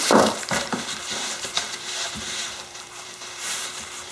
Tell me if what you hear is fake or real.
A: fake